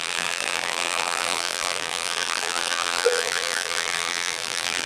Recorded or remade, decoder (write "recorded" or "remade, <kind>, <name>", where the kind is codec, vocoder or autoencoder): remade, vocoder, BigVGAN v2